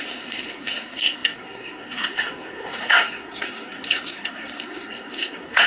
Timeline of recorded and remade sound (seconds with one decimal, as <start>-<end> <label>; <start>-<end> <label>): 0.0-5.7 remade